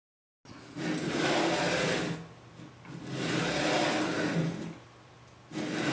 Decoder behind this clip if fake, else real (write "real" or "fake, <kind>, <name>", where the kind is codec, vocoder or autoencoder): real